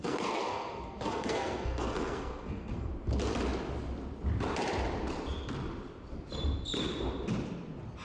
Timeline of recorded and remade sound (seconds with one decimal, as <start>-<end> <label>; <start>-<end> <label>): 0.0-2.9 remade; 2.9-8.0 recorded